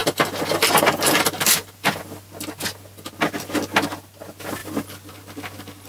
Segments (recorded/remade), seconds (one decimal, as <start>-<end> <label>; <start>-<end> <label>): 0.0-2.3 remade; 2.3-4.6 recorded; 4.6-5.1 remade; 5.1-5.9 recorded